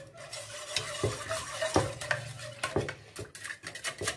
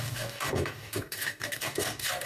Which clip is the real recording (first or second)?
first